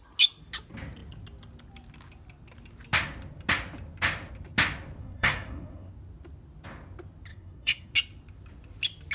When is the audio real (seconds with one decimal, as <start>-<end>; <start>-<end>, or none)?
0.0-5.0; 5.9-7.3; 7.9-9.1